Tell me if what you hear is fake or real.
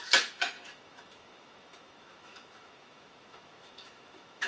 fake